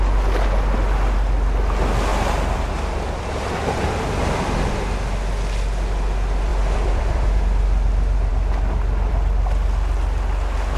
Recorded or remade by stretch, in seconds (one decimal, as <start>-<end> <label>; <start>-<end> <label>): 0.0-6.5 recorded; 6.5-7.4 remade; 7.4-10.8 recorded